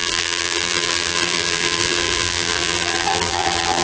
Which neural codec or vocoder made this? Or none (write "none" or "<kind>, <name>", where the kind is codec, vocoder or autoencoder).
vocoder, BigVGAN v2